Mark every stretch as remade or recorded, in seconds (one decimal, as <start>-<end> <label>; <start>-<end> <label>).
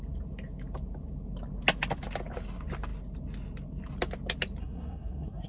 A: 0.0-4.6 recorded; 4.6-5.5 remade